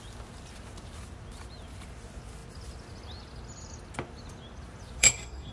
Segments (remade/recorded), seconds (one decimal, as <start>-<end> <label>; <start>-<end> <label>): 0.0-5.0 recorded; 5.0-5.5 remade